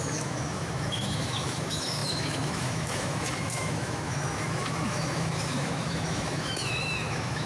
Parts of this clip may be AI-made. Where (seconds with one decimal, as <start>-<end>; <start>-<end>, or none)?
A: 0.0-7.5